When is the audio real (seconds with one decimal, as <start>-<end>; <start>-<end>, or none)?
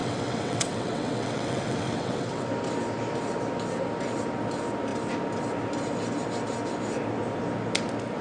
2.5-8.2